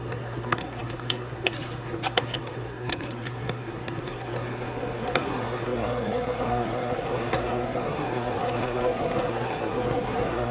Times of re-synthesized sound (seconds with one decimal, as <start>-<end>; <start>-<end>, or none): 0.0-10.5